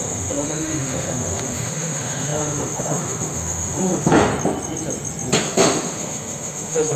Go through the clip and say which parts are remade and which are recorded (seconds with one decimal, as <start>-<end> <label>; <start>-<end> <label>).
0.0-4.3 remade; 4.3-5.4 recorded; 5.4-7.0 remade